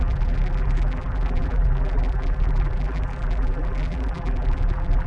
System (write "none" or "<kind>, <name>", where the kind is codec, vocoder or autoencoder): vocoder, BigVGAN v2